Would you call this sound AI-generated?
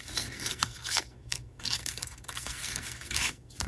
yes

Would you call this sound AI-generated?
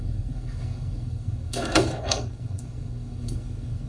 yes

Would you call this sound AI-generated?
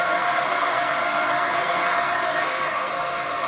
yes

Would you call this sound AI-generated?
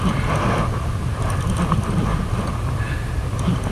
no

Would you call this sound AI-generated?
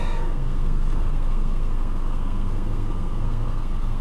yes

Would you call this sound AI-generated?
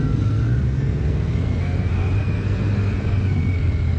yes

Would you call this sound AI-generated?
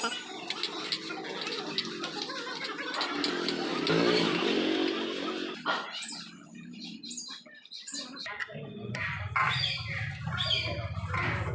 no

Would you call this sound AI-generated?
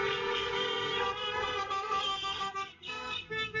yes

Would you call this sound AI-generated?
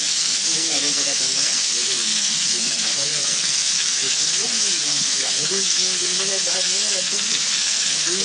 yes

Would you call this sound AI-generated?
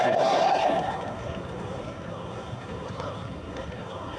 yes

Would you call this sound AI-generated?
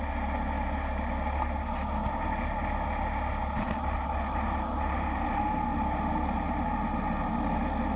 no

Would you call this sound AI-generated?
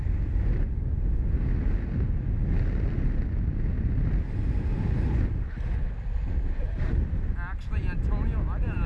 no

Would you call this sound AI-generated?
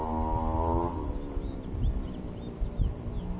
no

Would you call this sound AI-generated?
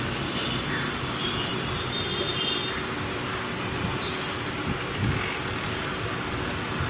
no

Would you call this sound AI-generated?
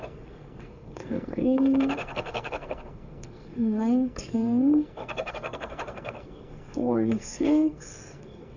yes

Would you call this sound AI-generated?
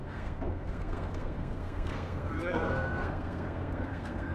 yes